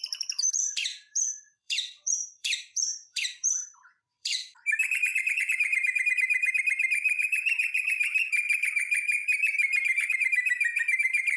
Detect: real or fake fake